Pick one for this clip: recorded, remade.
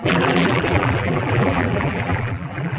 remade